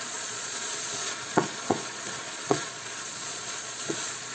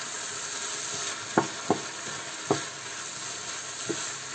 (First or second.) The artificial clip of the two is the first